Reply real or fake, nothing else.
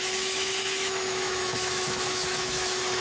fake